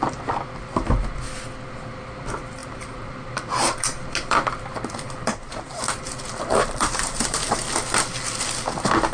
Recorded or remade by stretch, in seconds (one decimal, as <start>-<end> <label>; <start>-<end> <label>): 0.0-2.6 recorded; 2.6-3.5 remade; 3.5-5.3 recorded; 5.3-5.8 remade; 5.8-6.5 recorded; 6.5-7.6 remade; 7.6-9.1 recorded